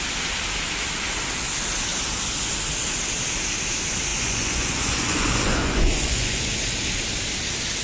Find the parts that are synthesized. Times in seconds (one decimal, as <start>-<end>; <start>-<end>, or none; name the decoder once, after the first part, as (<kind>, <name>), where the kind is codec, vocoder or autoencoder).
4.1-6.5 (vocoder, Vocos)